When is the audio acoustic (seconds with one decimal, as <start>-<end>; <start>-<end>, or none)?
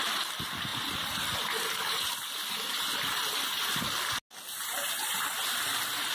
0.0-6.1